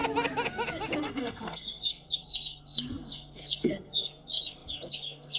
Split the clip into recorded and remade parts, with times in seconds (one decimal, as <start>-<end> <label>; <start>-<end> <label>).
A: 0.0-1.0 recorded; 1.0-5.4 remade